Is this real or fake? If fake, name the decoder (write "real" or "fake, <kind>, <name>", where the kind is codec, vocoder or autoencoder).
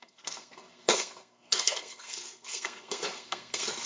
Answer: fake, codec, SNAC